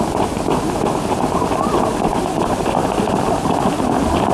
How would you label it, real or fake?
real